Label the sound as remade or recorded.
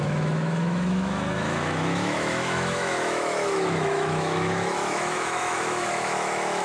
remade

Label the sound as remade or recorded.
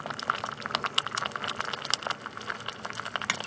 recorded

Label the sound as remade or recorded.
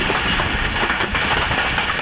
recorded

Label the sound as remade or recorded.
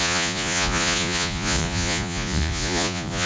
remade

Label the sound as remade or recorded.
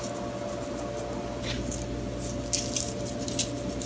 recorded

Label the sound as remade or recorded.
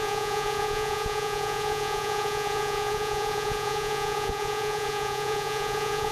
remade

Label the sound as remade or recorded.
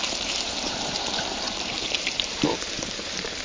remade